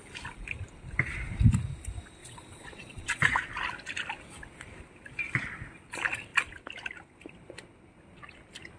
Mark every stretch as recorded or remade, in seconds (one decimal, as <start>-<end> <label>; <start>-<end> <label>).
0.0-2.2 recorded; 2.2-3.5 remade; 3.5-8.8 recorded